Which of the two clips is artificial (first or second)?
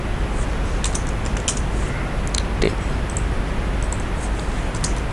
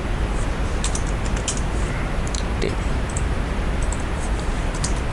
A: second